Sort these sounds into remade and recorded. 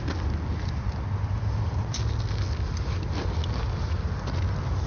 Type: recorded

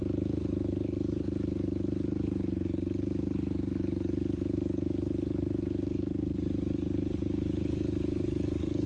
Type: remade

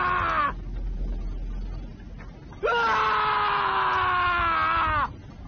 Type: recorded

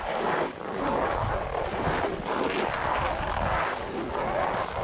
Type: recorded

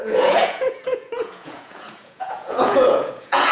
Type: remade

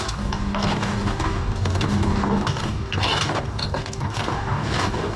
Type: remade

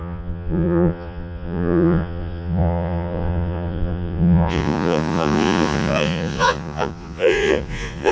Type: remade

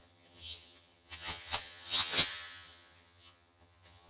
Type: remade